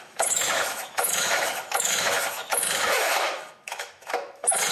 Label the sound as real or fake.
fake